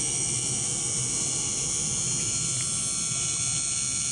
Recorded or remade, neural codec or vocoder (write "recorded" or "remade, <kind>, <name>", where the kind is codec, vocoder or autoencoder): recorded